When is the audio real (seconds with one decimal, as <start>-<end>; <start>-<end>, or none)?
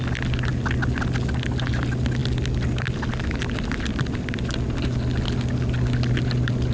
0.0-6.7